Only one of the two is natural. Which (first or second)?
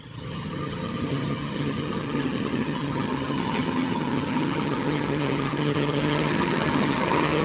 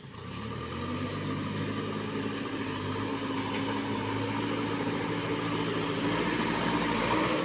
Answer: second